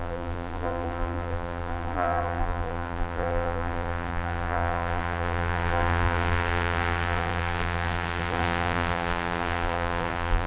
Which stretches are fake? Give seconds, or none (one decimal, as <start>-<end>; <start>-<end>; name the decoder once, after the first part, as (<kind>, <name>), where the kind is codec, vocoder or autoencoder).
0.0-10.5 (vocoder, BigVGAN v2)